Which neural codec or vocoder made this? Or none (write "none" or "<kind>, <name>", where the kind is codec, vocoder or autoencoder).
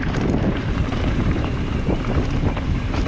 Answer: vocoder, BigVGAN v2